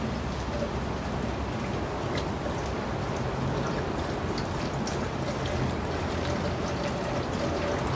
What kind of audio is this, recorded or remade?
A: recorded